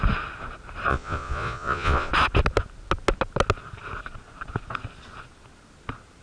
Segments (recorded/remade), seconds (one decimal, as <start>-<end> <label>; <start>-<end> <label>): 0.0-0.9 recorded; 0.9-2.1 remade; 2.1-6.2 recorded